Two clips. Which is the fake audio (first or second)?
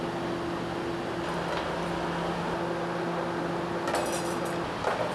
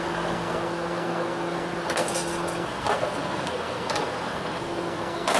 second